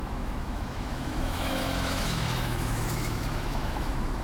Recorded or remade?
remade